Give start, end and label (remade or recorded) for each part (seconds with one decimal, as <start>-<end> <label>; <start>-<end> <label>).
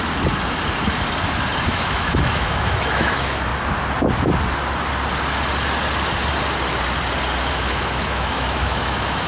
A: 0.0-1.7 recorded; 1.7-3.5 remade; 3.5-7.5 recorded; 7.5-9.3 remade